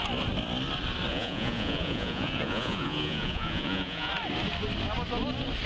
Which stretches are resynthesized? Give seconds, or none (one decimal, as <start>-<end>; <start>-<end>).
1.1-4.1